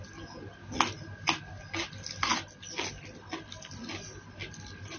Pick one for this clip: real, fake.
real